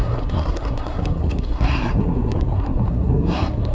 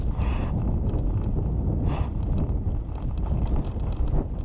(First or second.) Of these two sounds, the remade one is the first